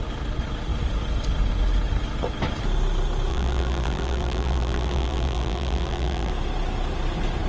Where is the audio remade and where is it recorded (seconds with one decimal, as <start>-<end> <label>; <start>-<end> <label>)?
0.0-3.3 recorded; 3.3-6.3 remade; 6.3-7.5 recorded